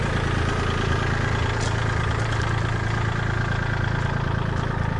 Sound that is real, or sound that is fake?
real